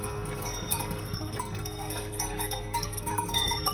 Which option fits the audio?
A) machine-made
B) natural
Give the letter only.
A